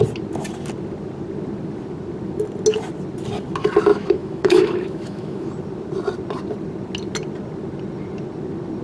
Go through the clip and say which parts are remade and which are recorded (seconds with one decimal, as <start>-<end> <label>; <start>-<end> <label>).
0.0-3.9 recorded; 3.9-5.5 remade; 5.5-8.8 recorded